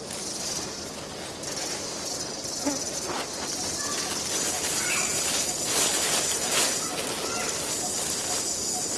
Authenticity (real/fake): real